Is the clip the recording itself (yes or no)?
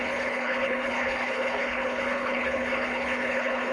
no